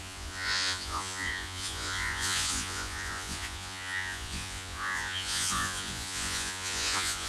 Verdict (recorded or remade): remade